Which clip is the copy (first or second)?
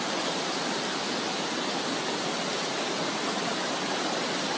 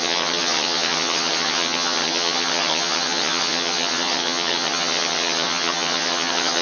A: second